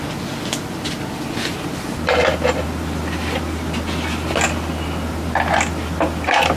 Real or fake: real